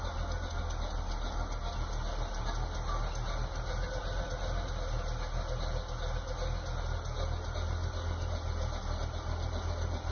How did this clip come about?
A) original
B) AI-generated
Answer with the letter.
A